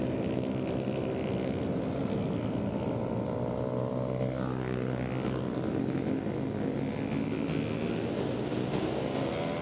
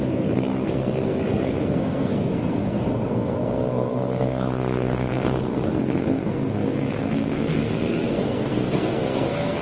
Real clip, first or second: first